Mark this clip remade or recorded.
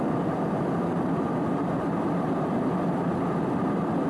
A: remade